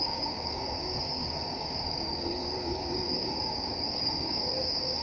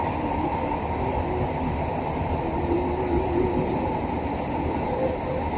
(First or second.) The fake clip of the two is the first